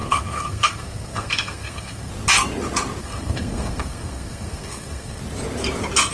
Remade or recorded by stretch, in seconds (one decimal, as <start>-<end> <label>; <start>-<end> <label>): 0.0-2.1 remade; 2.1-3.0 recorded; 3.0-5.2 remade; 5.2-6.1 recorded